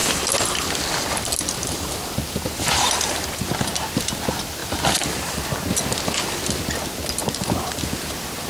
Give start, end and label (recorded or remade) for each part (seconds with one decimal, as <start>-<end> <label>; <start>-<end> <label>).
0.0-1.9 remade; 1.9-4.6 recorded; 4.6-5.5 remade; 5.5-7.2 recorded; 7.2-8.5 remade